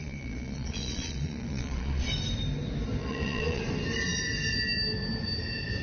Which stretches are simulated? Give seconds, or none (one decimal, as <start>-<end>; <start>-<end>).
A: 0.0-2.1; 3.0-3.6